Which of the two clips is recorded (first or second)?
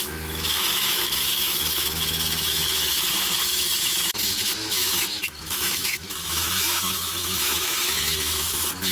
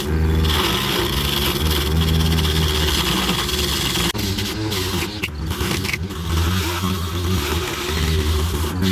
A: second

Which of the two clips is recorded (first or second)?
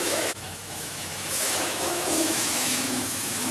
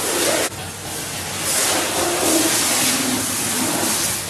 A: second